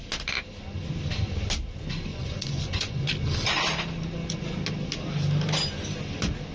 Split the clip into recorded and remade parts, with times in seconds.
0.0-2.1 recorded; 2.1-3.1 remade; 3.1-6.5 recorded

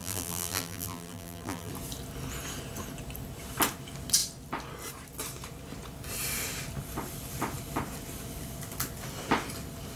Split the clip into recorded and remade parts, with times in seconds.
0.0-1.7 remade; 1.7-10.0 recorded

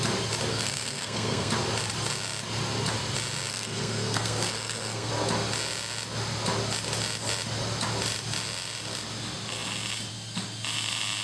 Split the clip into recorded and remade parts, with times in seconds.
0.0-0.5 recorded; 0.5-1.5 remade; 1.5-3.5 recorded; 3.5-5.1 remade; 5.1-11.2 recorded

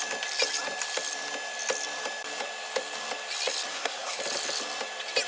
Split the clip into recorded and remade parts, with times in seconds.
0.0-3.7 recorded; 3.7-4.2 remade; 4.2-5.3 recorded

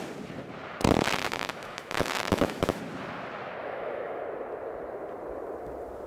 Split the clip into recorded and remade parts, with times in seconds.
0.0-1.2 recorded; 1.2-2.8 remade; 2.8-3.6 recorded; 3.6-4.2 remade; 4.2-6.1 recorded

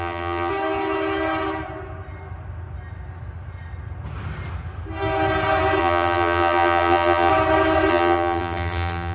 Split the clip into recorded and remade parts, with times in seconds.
0.0-0.5 remade; 0.5-5.8 recorded; 5.8-7.3 remade; 7.3-7.9 recorded; 7.9-9.1 remade

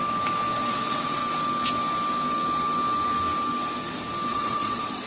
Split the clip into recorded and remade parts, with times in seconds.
0.0-0.7 recorded; 0.7-1.2 remade; 1.2-4.3 recorded; 4.3-5.1 remade